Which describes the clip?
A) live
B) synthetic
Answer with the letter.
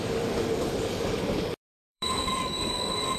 B